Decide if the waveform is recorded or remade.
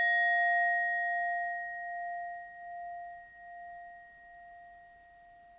recorded